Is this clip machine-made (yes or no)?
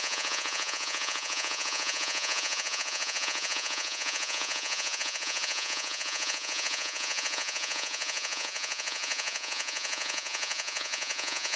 yes